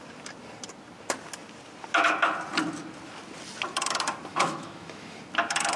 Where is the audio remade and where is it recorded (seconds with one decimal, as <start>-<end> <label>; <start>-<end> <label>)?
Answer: 0.0-4.3 recorded; 4.3-5.2 remade; 5.2-5.8 recorded